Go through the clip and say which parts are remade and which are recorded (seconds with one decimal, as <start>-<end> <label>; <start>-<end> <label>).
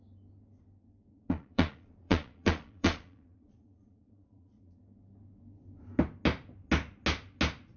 0.0-1.1 recorded; 1.1-4.8 remade; 4.8-7.8 recorded